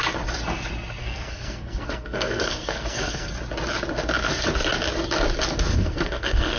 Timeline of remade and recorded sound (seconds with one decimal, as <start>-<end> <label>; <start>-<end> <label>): 0.0-1.0 recorded; 1.0-3.3 remade; 3.3-5.7 recorded; 5.7-6.6 remade